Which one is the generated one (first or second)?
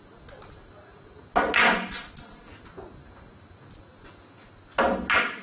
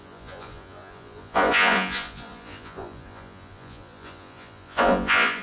second